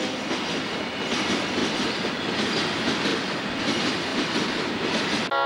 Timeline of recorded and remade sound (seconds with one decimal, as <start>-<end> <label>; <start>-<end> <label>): 0.0-1.6 recorded; 1.6-2.1 remade; 2.1-3.1 recorded; 3.1-3.6 remade; 3.6-4.1 recorded; 4.1-4.7 remade; 4.7-5.5 recorded